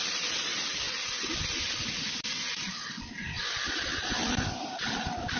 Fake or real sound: real